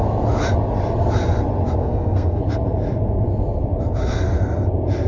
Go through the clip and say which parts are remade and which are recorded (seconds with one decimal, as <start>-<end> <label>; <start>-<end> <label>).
0.0-1.8 recorded; 1.8-2.4 remade; 2.4-5.1 recorded